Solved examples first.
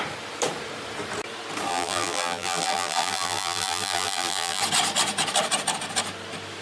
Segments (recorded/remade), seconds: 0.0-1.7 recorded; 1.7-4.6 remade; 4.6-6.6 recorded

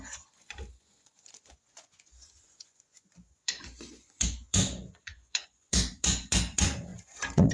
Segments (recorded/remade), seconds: 0.0-7.5 remade

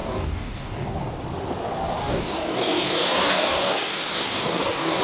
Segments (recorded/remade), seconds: 0.0-1.1 remade; 1.1-2.0 recorded; 2.0-5.0 remade

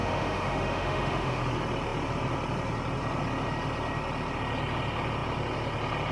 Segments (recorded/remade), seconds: 0.0-1.4 remade; 1.4-6.1 recorded

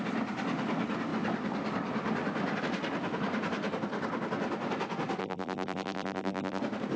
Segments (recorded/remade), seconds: 0.0-5.2 recorded; 5.2-6.6 remade; 6.6-7.0 recorded